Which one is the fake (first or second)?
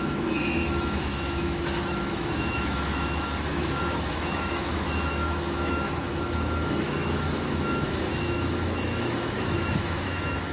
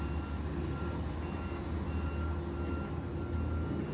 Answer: first